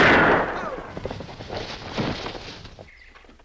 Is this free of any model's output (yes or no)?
yes